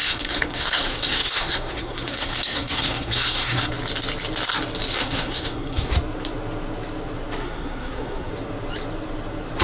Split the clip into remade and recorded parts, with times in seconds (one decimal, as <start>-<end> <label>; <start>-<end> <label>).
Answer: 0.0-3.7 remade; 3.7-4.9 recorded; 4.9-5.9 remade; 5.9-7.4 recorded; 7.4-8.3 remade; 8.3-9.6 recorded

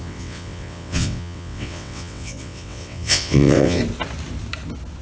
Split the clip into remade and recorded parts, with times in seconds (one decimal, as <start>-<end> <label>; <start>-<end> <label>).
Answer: 0.0-3.8 remade; 3.8-5.0 recorded

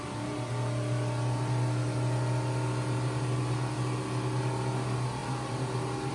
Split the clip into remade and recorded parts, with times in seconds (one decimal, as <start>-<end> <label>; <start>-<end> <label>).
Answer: 0.0-6.1 recorded

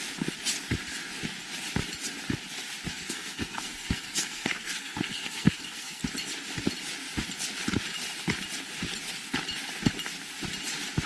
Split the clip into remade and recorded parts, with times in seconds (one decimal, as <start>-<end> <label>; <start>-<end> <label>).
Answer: 0.0-2.9 recorded; 2.9-6.0 remade; 6.0-11.1 recorded

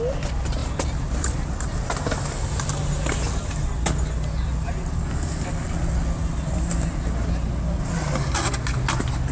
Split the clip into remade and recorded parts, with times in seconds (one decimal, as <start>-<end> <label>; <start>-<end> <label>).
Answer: 0.0-6.2 recorded; 6.2-6.7 remade; 6.7-9.3 recorded

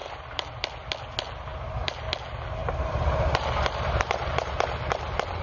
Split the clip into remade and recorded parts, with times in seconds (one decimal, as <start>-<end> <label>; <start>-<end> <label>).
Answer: 0.0-0.5 remade; 0.5-1.5 recorded; 1.5-2.0 remade; 2.0-2.6 recorded; 2.6-4.5 remade; 4.5-5.4 recorded

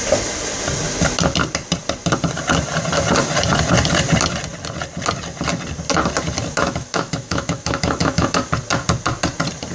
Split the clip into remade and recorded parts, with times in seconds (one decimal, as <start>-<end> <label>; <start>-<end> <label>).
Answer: 0.0-6.6 recorded; 6.6-8.4 remade; 8.4-9.7 recorded